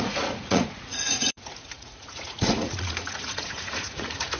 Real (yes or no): no